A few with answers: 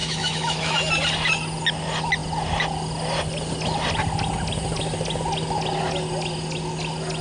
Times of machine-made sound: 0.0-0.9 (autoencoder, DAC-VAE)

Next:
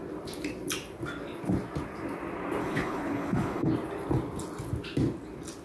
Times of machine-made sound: 2.6-3.7 (codec, HILCodec)

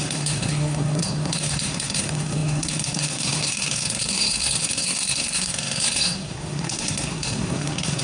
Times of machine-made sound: 0.0-8.0 (codec, SNAC)